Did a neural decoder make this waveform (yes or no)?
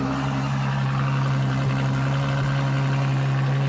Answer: no